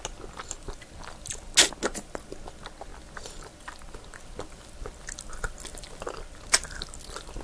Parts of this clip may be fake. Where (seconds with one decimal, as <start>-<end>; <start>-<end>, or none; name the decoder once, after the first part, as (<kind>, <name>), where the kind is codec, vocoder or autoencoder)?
none